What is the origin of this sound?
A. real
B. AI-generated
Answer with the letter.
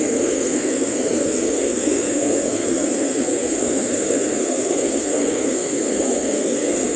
B